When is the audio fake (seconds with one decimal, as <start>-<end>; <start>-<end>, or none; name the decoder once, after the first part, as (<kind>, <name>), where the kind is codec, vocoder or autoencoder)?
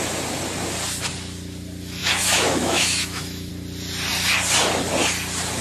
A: 2.0-3.5 (autoencoder, DAC-VAE)